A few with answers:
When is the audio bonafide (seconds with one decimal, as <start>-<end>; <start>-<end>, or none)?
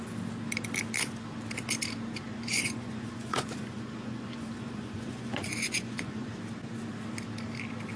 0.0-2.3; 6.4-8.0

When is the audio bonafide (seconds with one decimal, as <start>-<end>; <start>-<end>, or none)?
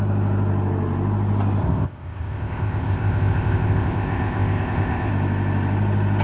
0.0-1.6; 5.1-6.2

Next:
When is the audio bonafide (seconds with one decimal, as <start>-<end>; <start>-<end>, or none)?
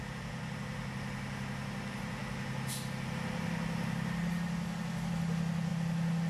0.0-6.3